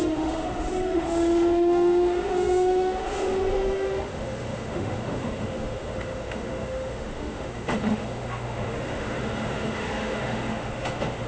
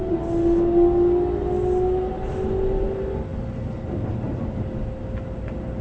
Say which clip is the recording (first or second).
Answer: second